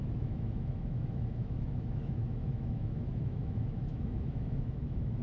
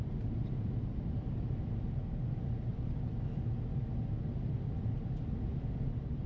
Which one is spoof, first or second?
first